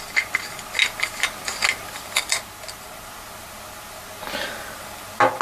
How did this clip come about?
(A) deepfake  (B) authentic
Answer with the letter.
B